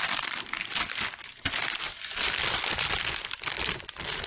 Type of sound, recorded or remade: recorded